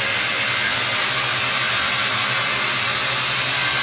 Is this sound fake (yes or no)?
no